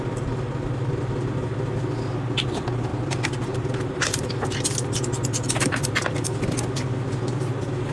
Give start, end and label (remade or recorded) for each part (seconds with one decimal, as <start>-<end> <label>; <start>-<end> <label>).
0.0-7.9 recorded

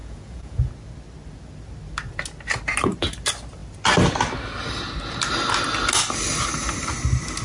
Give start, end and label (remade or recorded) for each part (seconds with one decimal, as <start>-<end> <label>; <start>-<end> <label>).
0.0-0.7 remade; 0.7-7.4 recorded

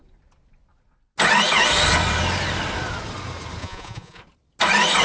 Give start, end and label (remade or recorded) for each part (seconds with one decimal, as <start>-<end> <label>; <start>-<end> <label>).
0.0-3.6 recorded; 3.6-4.2 remade; 4.2-5.0 recorded

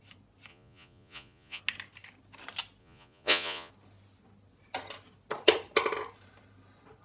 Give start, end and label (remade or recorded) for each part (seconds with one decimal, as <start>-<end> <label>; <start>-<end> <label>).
0.0-0.5 recorded; 0.5-1.6 remade; 1.6-2.8 recorded; 2.8-3.7 remade; 3.7-7.0 recorded

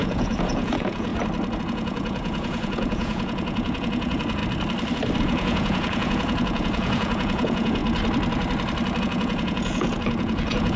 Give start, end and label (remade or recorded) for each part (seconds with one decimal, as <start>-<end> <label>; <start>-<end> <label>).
0.0-1.1 remade; 1.1-1.6 recorded; 1.6-4.4 remade; 4.4-5.2 recorded; 5.2-7.8 remade; 7.8-9.0 recorded; 9.0-10.8 remade

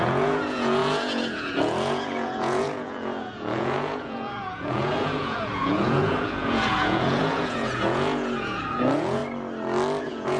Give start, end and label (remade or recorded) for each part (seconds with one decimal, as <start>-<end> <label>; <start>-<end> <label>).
0.0-9.2 remade; 9.2-10.0 recorded; 10.0-10.4 remade

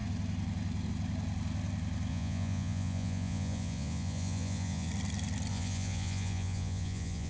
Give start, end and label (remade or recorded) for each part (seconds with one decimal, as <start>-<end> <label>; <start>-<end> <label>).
0.0-2.1 recorded; 2.1-4.9 remade; 4.9-5.5 recorded; 5.5-7.3 remade

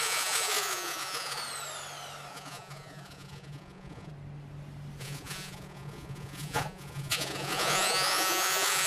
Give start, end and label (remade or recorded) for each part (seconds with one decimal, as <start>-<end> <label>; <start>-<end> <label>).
0.0-1.4 remade; 1.4-2.3 recorded; 2.3-4.1 remade; 4.1-5.0 recorded; 5.0-8.9 remade